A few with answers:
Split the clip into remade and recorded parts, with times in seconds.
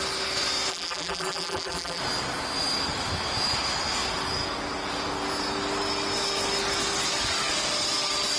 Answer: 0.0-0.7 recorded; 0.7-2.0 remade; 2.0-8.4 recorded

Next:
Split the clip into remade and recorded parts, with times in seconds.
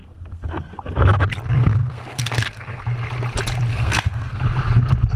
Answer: 0.0-1.2 remade; 1.2-1.6 recorded; 1.6-2.8 remade; 2.8-3.7 recorded; 3.7-4.4 remade; 4.4-5.2 recorded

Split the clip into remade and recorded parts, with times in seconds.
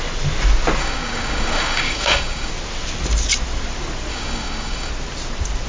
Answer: 0.0-0.8 recorded; 0.8-2.5 remade; 2.5-4.1 recorded; 4.1-4.9 remade; 4.9-5.7 recorded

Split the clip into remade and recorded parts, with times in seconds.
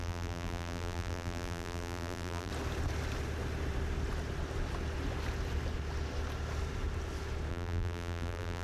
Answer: 0.0-2.5 remade; 2.5-7.5 recorded; 7.5-8.6 remade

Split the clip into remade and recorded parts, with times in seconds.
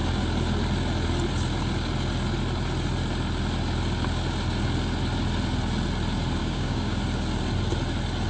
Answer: 0.0-6.4 recorded; 6.4-7.0 remade; 7.0-8.3 recorded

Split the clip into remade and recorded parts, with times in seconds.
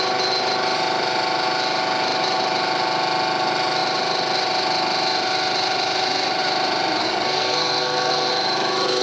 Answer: 0.0-7.0 recorded; 7.0-8.3 remade; 8.3-9.0 recorded